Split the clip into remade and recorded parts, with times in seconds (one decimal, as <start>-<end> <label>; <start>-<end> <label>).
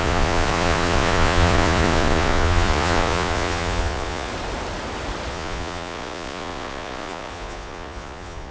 0.0-4.3 remade; 4.3-5.3 recorded; 5.3-8.5 remade